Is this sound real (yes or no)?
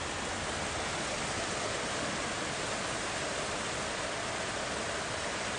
yes